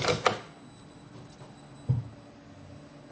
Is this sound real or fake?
real